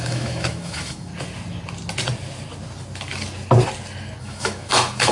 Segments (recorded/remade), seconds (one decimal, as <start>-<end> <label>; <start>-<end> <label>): 0.0-1.1 remade; 1.1-4.2 recorded; 4.2-5.1 remade

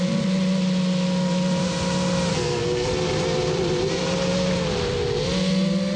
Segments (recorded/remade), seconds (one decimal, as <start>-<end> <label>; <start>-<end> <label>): 0.0-2.3 recorded; 2.3-2.9 remade; 2.9-6.0 recorded